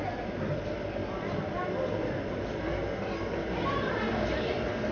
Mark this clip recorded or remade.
recorded